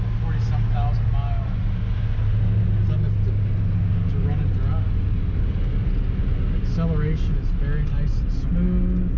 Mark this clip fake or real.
real